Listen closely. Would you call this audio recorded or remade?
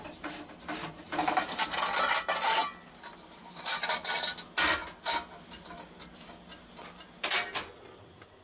recorded